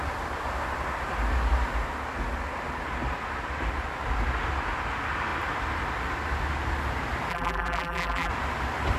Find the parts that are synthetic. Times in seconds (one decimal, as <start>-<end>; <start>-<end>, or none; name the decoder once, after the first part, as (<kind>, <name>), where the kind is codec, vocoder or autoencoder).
7.3-8.3 (vocoder, BigVGAN v2)